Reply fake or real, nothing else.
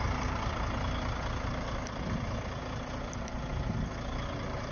real